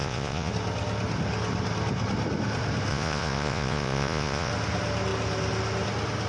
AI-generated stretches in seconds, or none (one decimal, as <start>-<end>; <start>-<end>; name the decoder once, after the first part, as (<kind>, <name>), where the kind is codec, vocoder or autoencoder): 0.0-0.5 (vocoder, Vocos); 2.9-4.5